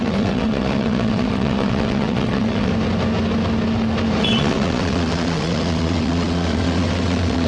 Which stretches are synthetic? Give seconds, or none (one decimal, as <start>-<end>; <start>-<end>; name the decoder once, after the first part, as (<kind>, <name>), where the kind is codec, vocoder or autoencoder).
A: 0.0-2.7 (vocoder, WaveNeXt); 4.2-7.5